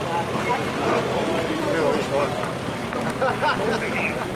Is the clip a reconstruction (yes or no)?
no